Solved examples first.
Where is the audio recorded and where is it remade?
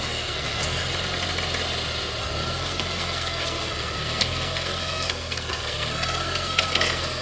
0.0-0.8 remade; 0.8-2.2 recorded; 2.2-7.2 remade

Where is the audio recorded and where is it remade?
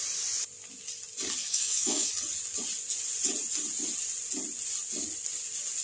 0.0-1.5 recorded; 1.5-2.1 remade; 2.1-5.8 recorded